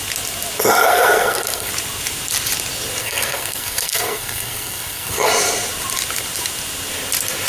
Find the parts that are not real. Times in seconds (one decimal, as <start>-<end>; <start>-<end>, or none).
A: 0.8-1.7; 3.0-5.3